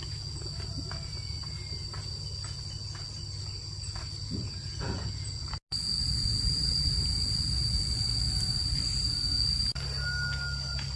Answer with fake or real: real